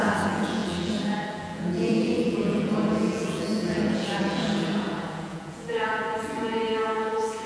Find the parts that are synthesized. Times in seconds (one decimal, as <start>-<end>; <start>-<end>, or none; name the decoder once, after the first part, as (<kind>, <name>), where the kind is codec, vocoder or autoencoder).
0.0-7.5 (vocoder, Vocos)

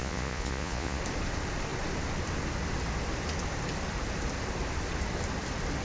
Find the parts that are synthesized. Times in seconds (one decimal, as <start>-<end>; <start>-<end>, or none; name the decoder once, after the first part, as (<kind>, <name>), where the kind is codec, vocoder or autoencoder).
0.0-1.0 (vocoder, Vocos)

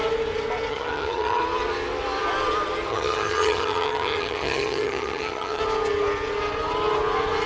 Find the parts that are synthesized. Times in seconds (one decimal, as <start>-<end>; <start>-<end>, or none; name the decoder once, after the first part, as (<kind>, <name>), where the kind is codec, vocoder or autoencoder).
0.7-1.4 (vocoder, HiFi-GAN); 2.9-5.6

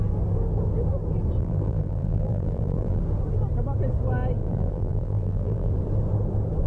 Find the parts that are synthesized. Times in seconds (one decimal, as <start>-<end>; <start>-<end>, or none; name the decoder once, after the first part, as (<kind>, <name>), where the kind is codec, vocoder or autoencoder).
1.4-3.0 (vocoder, BigVGAN v2); 4.4-5.7